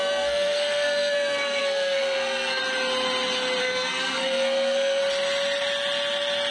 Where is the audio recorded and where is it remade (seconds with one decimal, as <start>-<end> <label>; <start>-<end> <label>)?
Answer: 0.0-2.6 remade; 2.6-3.6 recorded; 3.6-5.0 remade; 5.0-6.5 recorded